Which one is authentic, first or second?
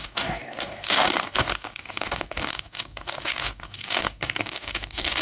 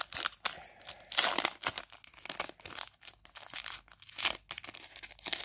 second